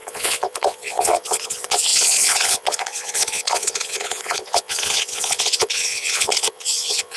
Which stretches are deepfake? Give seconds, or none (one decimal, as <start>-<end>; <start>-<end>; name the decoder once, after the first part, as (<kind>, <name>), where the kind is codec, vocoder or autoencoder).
0.0-7.2 (vocoder, Vocos)